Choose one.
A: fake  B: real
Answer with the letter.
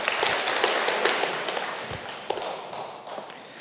B